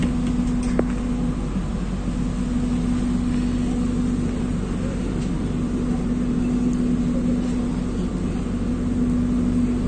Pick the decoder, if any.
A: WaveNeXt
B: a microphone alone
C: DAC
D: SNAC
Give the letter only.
B